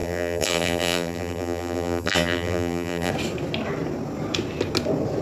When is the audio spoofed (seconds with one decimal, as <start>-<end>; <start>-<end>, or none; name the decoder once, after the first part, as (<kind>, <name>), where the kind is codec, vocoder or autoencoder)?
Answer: 0.0-3.1 (vocoder, BigVGAN v2)